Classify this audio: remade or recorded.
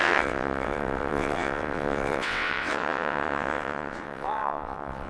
remade